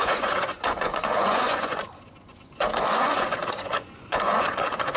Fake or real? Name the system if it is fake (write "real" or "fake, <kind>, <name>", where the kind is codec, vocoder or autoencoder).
fake, vocoder, Vocos